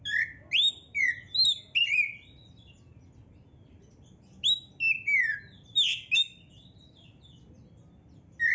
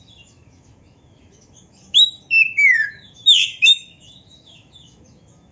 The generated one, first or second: second